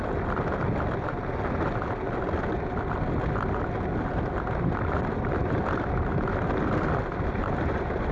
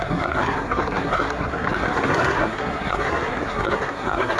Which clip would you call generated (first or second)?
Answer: second